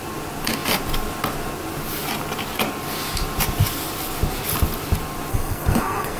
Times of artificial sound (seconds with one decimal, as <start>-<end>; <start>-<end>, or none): 5.3-6.2

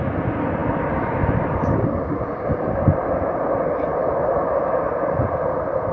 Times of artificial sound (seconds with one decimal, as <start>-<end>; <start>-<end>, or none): none

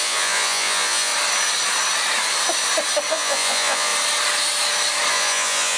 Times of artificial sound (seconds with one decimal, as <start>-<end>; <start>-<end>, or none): 0.0-1.1; 3.1-3.9; 5.1-5.8

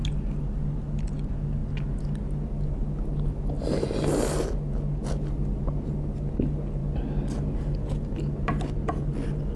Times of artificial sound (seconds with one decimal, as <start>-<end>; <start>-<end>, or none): none

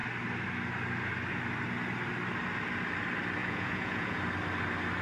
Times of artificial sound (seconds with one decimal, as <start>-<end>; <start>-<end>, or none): 3.4-4.2